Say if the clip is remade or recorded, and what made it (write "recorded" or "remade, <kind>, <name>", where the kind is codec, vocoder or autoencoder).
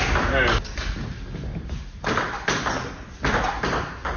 recorded